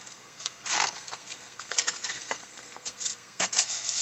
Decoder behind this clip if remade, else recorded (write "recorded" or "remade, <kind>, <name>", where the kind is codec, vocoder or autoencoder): remade, codec, SNAC